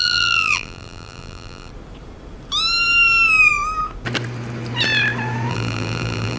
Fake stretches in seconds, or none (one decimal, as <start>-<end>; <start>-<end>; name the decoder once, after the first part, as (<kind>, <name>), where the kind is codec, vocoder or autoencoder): 0.0-1.7 (vocoder, BigVGAN v2); 5.5-6.4